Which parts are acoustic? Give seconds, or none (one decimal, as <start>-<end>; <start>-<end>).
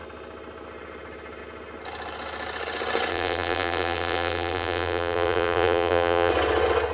0.0-3.1; 6.3-6.9